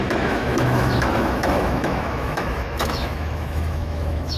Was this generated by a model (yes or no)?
yes